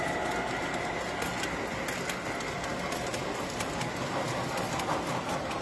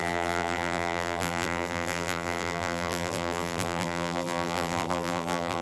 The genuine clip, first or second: first